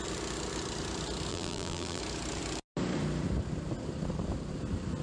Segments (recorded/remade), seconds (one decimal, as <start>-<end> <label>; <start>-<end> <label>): 0.0-1.3 recorded; 1.3-2.0 remade; 2.0-5.0 recorded